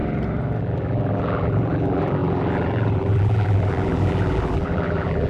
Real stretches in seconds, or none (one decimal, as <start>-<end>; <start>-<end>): 0.0-0.6